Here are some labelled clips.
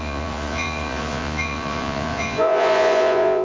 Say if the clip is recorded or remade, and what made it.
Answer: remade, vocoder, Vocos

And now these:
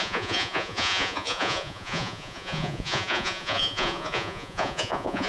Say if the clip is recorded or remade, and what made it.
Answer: remade, vocoder, Vocos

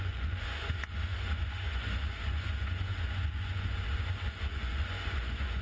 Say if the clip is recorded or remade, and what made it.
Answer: remade, vocoder, Vocos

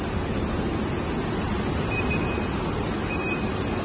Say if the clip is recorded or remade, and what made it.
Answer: recorded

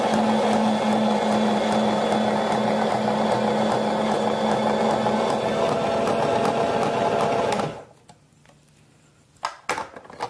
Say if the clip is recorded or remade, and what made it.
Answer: recorded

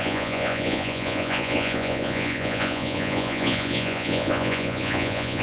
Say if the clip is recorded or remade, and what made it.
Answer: remade, vocoder, Vocos